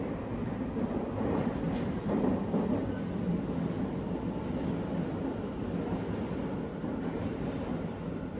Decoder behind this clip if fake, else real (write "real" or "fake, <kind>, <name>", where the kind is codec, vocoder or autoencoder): real